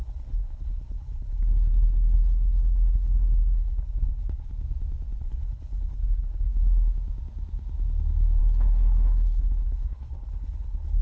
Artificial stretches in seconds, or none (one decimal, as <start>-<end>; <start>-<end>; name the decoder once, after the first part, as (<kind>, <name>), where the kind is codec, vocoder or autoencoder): 0.0-4.5 (codec, HILCodec); 5.2-6.5; 8.4-11.0